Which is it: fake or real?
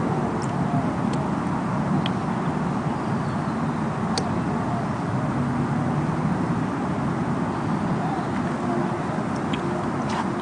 real